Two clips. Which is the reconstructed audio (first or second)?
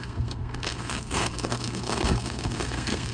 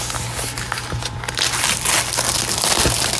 first